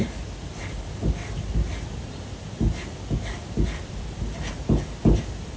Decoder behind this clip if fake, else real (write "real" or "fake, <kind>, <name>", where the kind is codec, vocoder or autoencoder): real